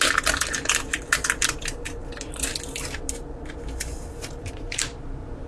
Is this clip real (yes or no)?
yes